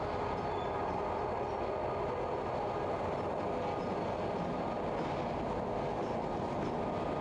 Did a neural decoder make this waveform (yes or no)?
no